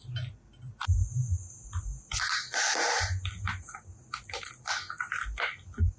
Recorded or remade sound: recorded